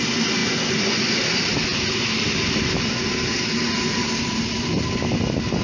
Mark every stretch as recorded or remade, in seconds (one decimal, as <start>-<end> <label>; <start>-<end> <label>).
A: 0.0-0.4 recorded; 0.4-1.0 remade; 1.0-5.6 recorded